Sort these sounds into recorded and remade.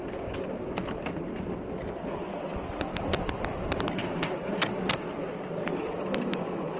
recorded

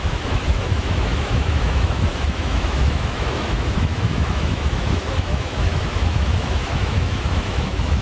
remade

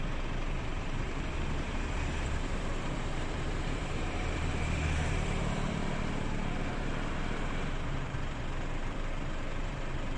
remade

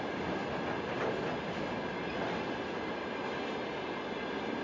recorded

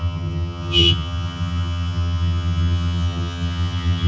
remade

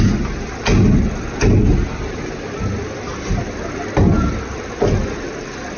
recorded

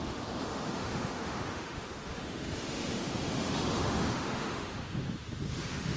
remade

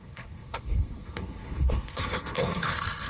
remade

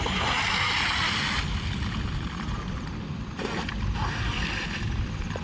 recorded